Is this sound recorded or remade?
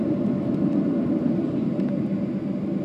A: recorded